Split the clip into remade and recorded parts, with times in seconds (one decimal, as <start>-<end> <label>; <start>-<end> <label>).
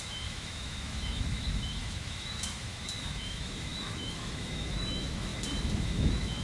0.0-5.3 remade; 5.3-5.8 recorded; 5.8-6.4 remade